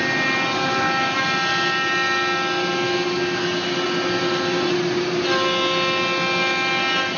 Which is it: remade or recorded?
recorded